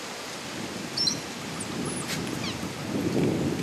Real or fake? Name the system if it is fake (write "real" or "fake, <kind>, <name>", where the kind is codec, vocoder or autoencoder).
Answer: real